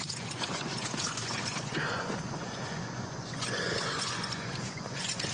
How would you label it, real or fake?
fake